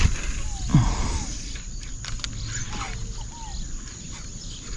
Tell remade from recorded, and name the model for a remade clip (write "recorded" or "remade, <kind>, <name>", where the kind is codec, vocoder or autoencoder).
recorded